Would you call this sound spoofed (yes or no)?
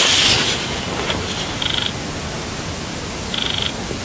no